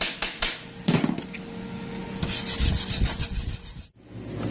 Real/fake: real